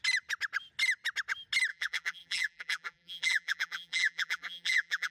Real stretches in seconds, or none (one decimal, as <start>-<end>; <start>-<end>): 0.0-1.7